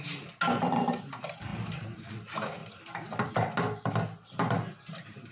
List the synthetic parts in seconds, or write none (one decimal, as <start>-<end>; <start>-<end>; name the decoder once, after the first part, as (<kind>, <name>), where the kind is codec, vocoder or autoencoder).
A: 2.6-3.3 (vocoder, BigVGAN v2)